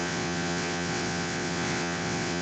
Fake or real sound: fake